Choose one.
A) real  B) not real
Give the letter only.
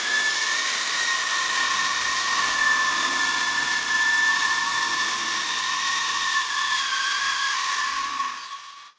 A